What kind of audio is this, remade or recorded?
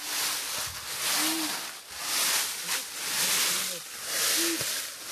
recorded